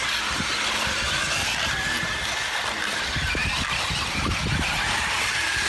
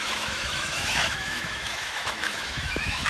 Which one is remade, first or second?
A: second